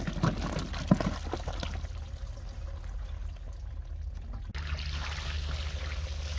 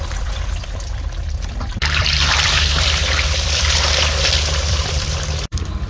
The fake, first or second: second